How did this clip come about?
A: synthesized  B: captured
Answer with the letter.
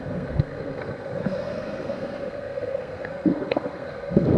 A